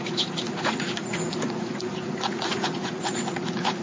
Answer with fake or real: fake